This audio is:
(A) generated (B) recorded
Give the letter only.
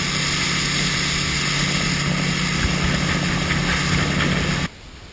B